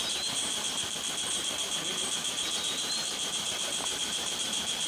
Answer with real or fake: fake